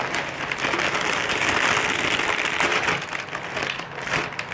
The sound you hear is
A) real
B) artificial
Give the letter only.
A